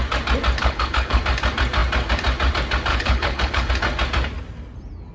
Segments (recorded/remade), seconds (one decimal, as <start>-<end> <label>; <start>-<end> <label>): 0.0-0.6 recorded; 0.6-1.2 remade; 1.2-2.9 recorded; 2.9-3.7 remade; 3.7-5.1 recorded